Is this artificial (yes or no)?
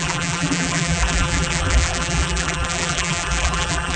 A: yes